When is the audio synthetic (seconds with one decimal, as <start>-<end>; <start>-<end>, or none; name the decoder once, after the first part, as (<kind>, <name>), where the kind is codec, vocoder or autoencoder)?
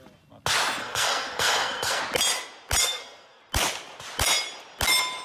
0.8-2.0 (codec, SNAC); 2.8-3.4